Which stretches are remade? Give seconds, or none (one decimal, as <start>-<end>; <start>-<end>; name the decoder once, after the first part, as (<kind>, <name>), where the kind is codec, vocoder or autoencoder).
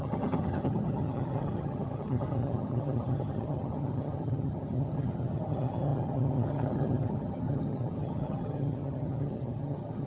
0.0-10.1 (vocoder, HiFi-GAN)